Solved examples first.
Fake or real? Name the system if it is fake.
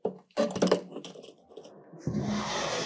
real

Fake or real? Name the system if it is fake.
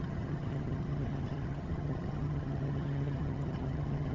fake, vocoder, HiFi-GAN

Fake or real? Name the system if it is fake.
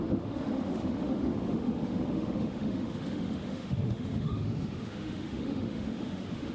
fake, autoencoder, DAC-VAE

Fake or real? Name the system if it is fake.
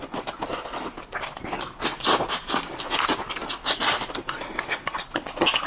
real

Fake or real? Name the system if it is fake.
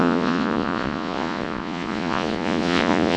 fake, vocoder, Vocos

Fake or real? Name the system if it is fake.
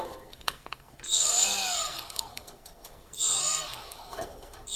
fake, codec, SNAC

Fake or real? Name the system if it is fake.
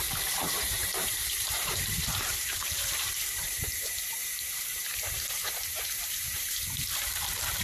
fake, vocoder, BigVGAN v2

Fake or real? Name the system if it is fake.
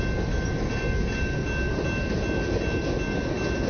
real